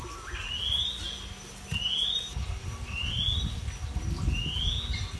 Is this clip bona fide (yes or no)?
yes